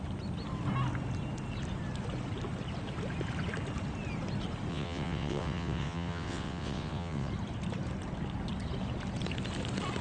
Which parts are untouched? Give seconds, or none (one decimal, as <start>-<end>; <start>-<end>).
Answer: 0.0-4.7; 7.3-10.0